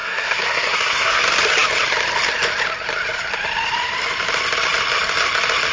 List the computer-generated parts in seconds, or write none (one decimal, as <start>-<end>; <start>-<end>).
0.0-1.2